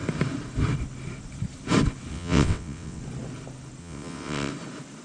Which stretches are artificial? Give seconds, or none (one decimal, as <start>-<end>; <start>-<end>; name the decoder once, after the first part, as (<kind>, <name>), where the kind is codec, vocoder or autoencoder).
2.1-3.0 (vocoder, WaveNeXt); 3.8-4.5